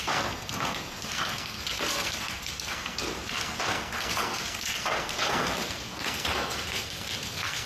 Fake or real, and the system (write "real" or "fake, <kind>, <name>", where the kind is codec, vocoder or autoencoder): fake, codec, SNAC